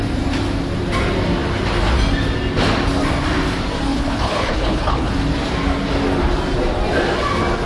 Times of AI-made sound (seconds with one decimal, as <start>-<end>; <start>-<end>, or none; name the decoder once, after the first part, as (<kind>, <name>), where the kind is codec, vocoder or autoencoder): 3.9-5.1 (codec, HILCodec)